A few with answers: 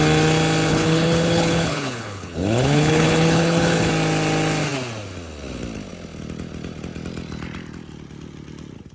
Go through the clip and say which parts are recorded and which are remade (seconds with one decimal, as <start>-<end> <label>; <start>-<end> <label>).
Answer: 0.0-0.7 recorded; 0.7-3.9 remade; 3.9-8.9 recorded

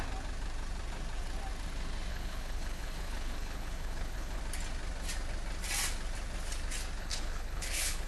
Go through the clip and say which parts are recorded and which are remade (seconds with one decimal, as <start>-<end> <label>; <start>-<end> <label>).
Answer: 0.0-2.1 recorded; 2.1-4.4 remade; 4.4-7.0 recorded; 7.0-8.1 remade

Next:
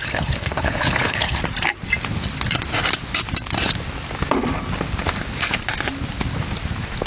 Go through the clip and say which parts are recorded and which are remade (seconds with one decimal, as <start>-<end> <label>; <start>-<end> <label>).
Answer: 0.0-1.4 remade; 1.4-7.1 recorded

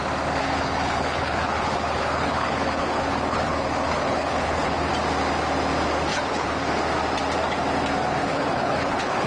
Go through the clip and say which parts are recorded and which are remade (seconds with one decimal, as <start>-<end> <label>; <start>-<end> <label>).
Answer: 0.0-0.4 recorded; 0.4-4.9 remade; 4.9-6.1 recorded; 6.1-6.8 remade; 6.8-8.2 recorded; 8.2-9.3 remade